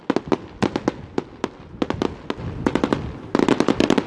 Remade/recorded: recorded